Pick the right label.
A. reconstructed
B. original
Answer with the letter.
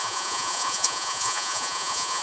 A